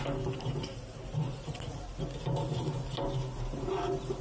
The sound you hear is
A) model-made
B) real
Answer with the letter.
B